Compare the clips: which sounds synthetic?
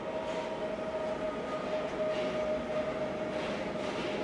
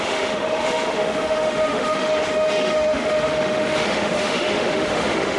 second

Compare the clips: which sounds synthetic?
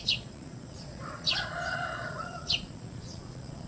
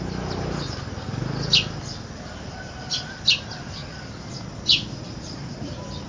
first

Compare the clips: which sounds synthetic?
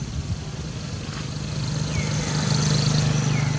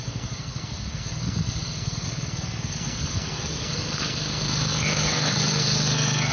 second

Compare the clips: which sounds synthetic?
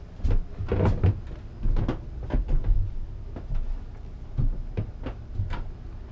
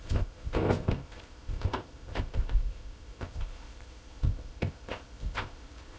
second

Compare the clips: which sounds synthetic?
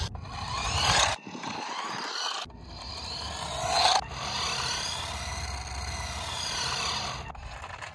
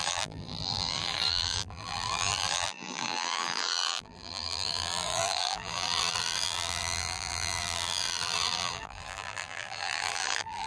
second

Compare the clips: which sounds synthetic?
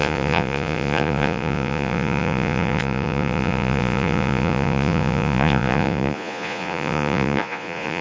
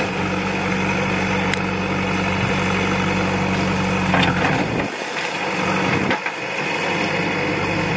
first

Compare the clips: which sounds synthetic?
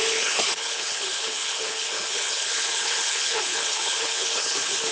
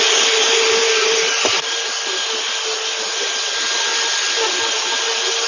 first